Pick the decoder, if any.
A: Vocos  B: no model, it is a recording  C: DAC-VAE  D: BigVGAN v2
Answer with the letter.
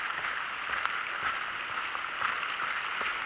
B